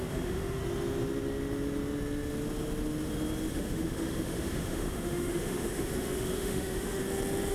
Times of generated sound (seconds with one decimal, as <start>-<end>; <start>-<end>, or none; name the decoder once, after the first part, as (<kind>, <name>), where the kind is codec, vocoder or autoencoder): 0.0-0.6 (autoencoder, DAC-VAE); 3.5-7.0